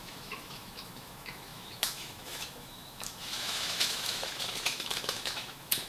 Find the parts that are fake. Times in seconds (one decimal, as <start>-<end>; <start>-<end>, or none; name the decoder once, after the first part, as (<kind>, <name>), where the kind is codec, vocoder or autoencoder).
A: 0.0-5.9 (autoencoder, DAC-VAE)